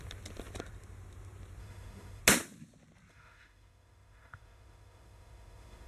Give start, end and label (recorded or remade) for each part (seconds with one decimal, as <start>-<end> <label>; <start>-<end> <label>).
0.0-1.6 recorded; 1.6-2.2 remade; 2.2-3.1 recorded; 3.1-5.9 remade